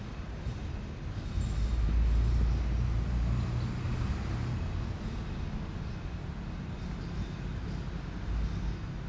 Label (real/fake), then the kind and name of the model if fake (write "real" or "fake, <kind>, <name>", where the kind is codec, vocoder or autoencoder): real